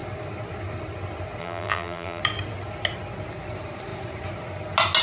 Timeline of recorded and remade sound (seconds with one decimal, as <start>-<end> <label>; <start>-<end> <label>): 0.0-1.4 recorded; 1.4-2.2 remade; 2.2-5.0 recorded